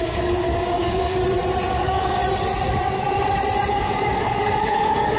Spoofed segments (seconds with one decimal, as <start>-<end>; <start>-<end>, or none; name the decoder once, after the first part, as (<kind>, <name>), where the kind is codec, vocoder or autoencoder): 0.0-1.2 (codec, DAC); 1.7-2.2; 3.7-5.2